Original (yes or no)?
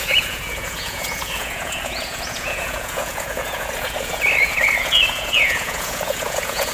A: no